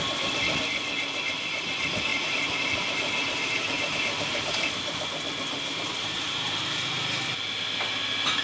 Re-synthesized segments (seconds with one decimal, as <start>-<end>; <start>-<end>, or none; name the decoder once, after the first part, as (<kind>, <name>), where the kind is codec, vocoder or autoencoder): 2.1-3.9 (vocoder, BigVGAN v2); 4.3-7.0

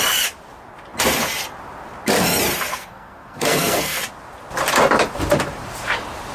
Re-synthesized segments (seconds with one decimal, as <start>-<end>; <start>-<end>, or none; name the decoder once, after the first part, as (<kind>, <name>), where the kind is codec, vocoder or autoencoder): 2.7-4.0 (codec, SNAC)

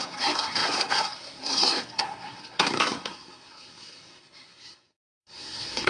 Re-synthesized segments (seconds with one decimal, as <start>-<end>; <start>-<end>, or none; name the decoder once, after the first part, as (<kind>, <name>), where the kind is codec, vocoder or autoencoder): 0.0-5.9 (codec, SNAC)